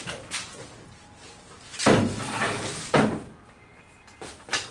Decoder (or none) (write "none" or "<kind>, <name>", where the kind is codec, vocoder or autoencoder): none